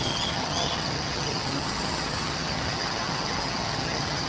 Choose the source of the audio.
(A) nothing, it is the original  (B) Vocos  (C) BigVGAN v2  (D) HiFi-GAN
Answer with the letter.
D